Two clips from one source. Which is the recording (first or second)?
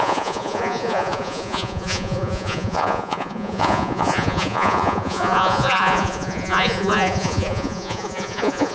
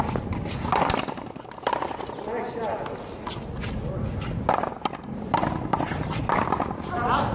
second